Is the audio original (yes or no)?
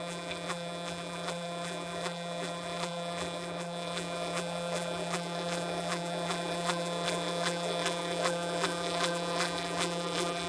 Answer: no